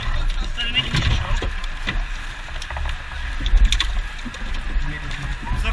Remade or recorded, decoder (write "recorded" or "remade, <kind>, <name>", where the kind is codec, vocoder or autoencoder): recorded